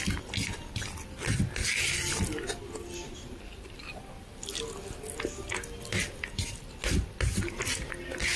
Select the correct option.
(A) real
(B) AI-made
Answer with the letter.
A